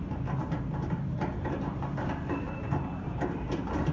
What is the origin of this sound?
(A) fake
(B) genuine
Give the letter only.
A